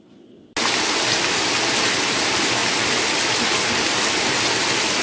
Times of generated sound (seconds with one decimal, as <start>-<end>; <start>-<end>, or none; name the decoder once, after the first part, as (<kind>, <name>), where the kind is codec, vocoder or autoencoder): none